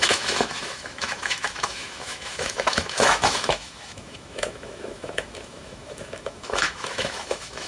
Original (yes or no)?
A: no